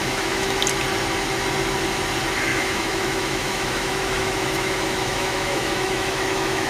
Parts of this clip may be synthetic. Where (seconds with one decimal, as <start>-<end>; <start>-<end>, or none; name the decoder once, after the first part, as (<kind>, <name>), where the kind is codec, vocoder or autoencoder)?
0.0-0.6 (autoencoder, DAC-VAE); 2.5-6.7